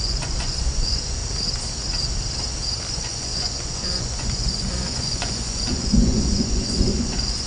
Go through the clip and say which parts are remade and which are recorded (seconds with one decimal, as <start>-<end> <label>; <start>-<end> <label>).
0.0-1.2 remade; 1.2-2.9 recorded; 2.9-7.5 remade